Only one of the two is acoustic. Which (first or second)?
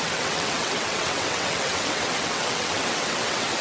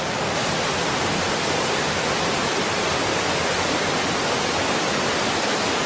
second